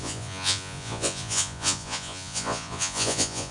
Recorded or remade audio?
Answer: remade